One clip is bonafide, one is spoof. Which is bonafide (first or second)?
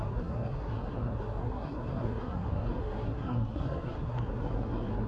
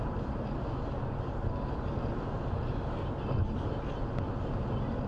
second